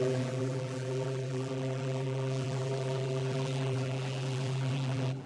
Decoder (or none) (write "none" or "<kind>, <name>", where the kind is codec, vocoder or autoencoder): vocoder, BigVGAN v2